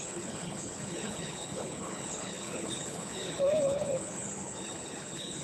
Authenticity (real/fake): fake